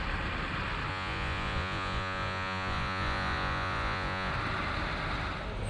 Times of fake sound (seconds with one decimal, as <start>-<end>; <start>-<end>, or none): 0.9-4.3